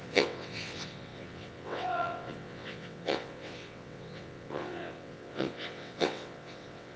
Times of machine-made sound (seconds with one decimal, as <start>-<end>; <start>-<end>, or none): 0.0-7.0